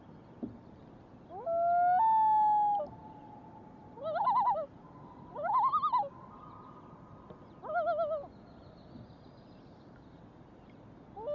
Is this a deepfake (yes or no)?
no